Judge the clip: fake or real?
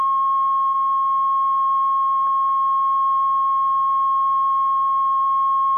real